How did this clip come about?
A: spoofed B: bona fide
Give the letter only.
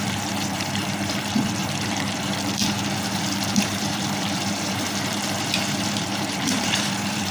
A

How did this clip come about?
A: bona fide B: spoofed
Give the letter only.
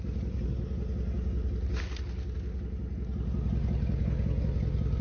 A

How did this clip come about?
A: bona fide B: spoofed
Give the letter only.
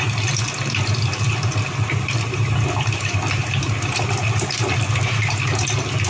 A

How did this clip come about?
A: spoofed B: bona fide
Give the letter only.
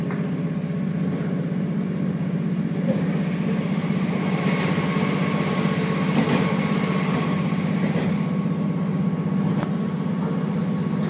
B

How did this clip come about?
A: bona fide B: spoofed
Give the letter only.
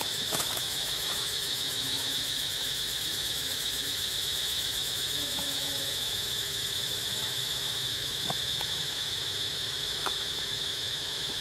B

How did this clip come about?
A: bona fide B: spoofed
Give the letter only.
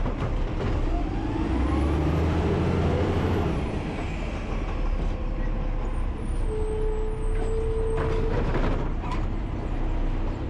A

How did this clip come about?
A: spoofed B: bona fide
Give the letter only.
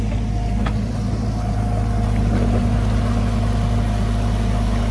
B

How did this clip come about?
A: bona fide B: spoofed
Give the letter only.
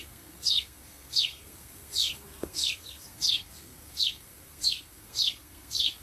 B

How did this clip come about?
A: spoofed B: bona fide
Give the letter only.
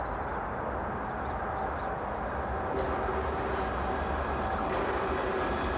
B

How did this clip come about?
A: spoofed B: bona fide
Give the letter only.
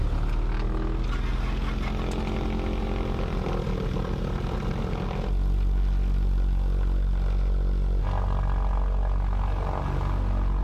B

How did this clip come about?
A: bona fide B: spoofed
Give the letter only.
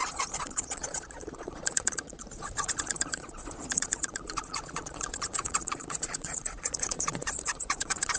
B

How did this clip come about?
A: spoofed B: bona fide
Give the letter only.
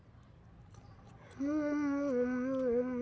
B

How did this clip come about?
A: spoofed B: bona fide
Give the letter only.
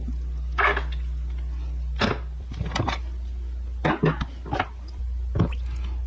B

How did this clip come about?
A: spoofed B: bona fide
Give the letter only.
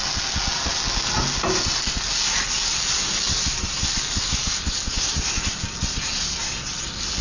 B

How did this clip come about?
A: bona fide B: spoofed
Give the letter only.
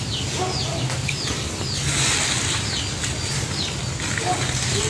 A